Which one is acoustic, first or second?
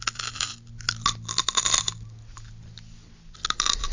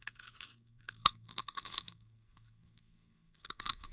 first